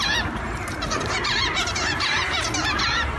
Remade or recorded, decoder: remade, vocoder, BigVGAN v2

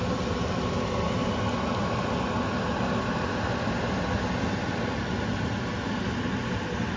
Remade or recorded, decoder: recorded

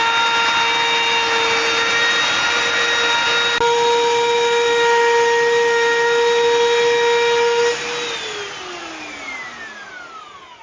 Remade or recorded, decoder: recorded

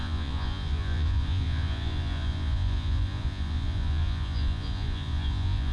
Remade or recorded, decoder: remade, vocoder, Vocos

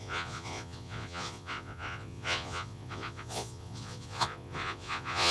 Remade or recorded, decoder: remade, vocoder, Vocos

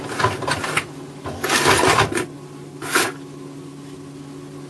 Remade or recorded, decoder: recorded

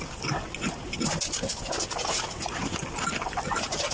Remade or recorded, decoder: recorded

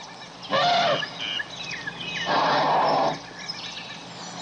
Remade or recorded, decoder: recorded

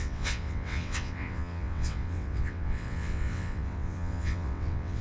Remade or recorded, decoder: remade, vocoder, WaveNeXt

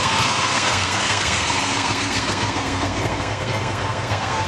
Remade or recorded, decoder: remade, codec, SNAC